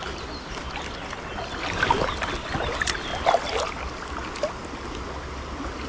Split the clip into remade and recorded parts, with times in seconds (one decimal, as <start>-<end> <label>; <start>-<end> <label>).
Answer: 0.0-5.9 recorded